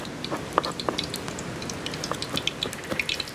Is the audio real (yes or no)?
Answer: yes